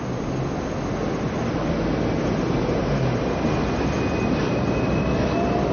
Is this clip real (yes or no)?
yes